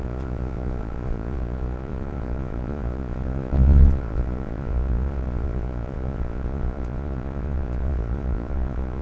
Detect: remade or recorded remade